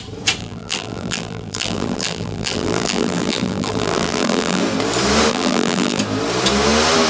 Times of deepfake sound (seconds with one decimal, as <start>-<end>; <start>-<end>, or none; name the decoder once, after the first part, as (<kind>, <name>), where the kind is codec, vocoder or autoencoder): 0.4-4.6 (vocoder, BigVGAN v2); 5.3-6.0